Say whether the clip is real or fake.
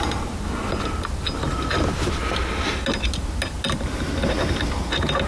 real